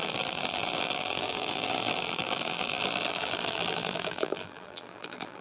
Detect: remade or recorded remade